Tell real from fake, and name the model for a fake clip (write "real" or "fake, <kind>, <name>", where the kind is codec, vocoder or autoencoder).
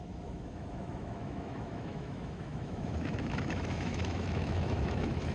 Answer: fake, autoencoder, DAC-VAE